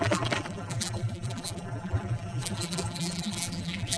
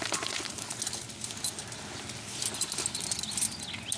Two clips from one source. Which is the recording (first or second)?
second